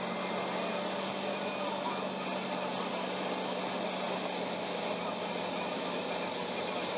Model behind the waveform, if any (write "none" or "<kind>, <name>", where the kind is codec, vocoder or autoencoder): none